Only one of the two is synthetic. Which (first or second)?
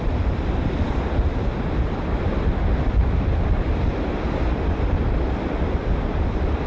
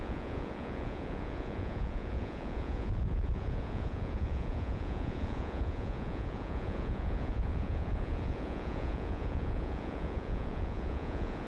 second